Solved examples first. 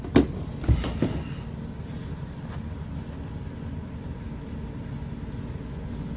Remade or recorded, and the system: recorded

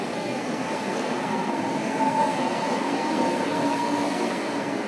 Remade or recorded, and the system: remade, codec, SNAC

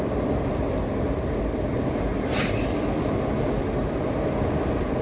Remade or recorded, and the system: recorded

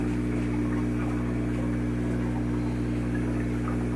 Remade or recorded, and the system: recorded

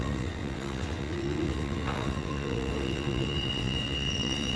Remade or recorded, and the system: remade, vocoder, WaveNeXt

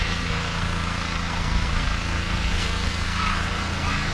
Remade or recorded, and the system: remade, codec, SNAC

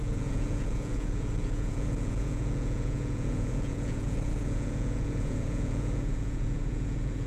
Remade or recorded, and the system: remade, vocoder, Vocos